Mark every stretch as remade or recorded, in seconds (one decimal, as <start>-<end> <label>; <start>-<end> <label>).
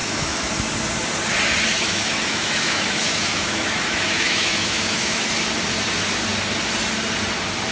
0.0-0.5 remade; 0.5-1.7 recorded; 1.7-5.3 remade; 5.3-7.7 recorded